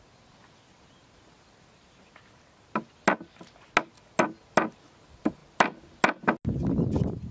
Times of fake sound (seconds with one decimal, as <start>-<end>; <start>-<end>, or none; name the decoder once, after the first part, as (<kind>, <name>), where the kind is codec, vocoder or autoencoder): none